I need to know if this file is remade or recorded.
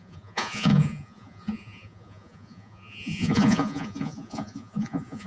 remade